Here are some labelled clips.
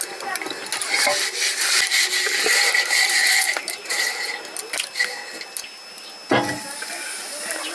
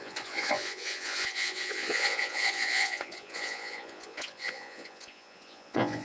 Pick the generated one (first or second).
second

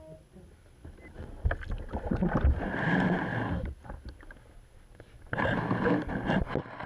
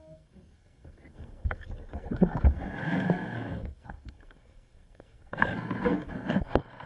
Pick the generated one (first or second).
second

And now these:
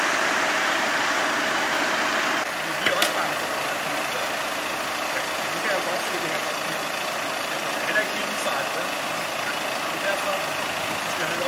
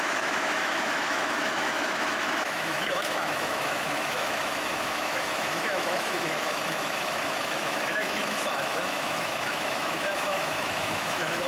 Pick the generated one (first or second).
second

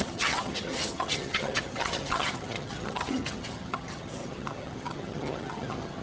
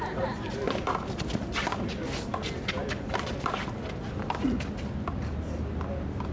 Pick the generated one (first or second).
first